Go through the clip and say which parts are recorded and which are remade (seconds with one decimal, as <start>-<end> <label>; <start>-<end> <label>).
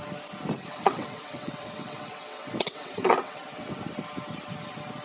0.0-0.7 recorded; 0.7-3.7 remade; 3.7-5.0 recorded